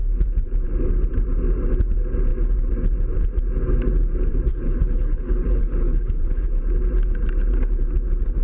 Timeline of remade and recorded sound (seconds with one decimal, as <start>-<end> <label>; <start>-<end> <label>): 0.0-4.5 recorded; 4.5-6.5 remade; 6.5-8.4 recorded